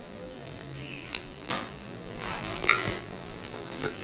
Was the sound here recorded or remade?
remade